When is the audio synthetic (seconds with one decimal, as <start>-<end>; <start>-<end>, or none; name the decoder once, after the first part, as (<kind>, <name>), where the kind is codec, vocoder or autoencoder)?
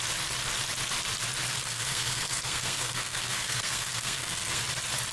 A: 1.5-4.6 (codec, SNAC)